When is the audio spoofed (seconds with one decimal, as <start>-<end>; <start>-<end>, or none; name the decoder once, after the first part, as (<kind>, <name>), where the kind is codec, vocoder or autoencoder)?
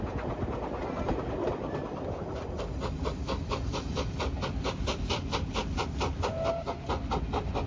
none